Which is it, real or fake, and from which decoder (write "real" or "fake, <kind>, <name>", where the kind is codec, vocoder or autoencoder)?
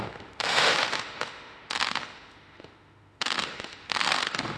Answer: fake, autoencoder, DAC-VAE